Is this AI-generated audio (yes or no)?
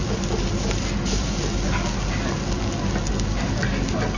no